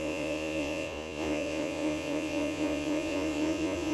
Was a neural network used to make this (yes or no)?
yes